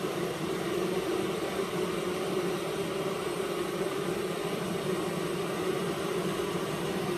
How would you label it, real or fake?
fake